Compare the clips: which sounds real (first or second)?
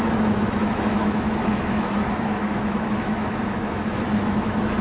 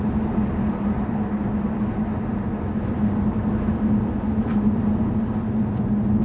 second